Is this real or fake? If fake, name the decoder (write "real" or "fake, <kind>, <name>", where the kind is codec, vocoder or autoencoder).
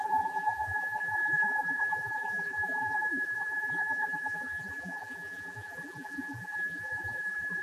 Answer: fake, vocoder, BigVGAN v2